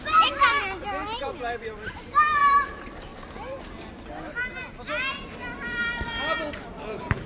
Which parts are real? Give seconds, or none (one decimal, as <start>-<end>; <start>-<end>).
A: 3.1-6.6